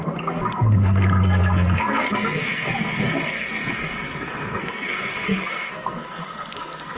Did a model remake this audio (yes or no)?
yes